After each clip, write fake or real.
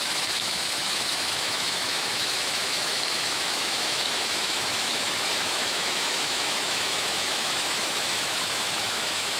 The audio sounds fake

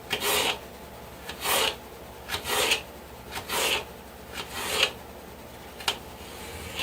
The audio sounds real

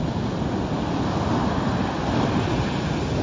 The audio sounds real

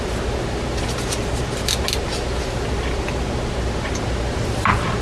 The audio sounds real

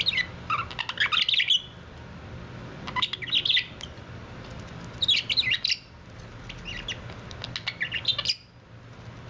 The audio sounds real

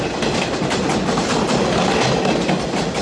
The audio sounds real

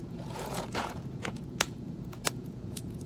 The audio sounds fake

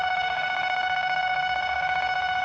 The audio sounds fake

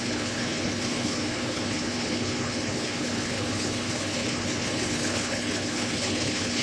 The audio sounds fake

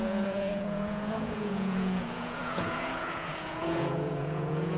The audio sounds fake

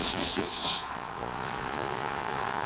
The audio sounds fake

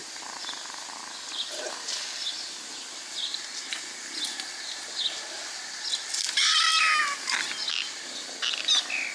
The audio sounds real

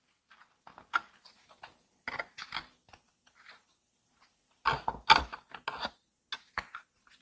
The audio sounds real